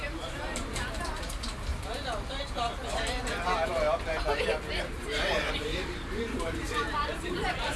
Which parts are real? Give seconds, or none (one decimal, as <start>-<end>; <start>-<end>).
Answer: 1.7-4.9